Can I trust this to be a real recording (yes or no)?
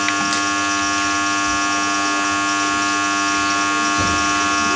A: yes